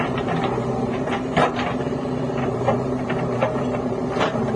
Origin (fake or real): fake